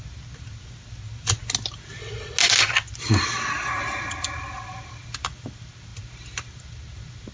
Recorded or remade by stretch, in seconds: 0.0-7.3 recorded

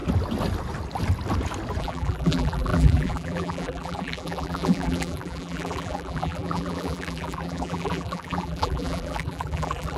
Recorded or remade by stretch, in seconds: 0.0-1.8 recorded; 1.8-10.0 remade

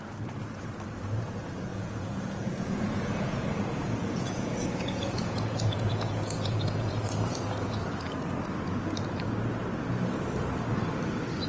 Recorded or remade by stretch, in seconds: 0.0-1.7 recorded; 1.7-6.9 remade; 6.9-11.5 recorded

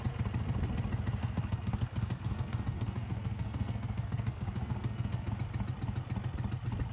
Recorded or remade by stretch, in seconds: 0.0-1.2 recorded; 1.2-5.3 remade; 5.3-6.9 recorded

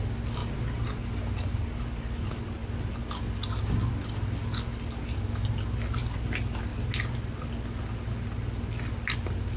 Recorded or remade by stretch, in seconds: 0.0-0.4 recorded; 0.4-2.2 remade; 2.2-9.6 recorded

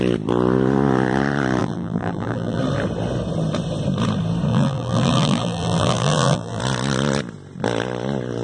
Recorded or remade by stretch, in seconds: 0.0-1.6 recorded; 1.6-2.6 remade; 2.6-4.5 recorded; 4.5-6.6 remade; 6.6-8.4 recorded

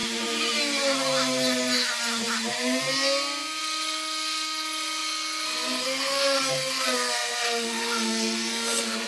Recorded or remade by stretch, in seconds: 0.0-3.6 recorded; 3.6-9.1 remade